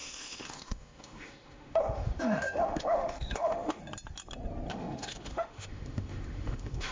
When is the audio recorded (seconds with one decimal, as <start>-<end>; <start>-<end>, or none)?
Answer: 3.8-4.7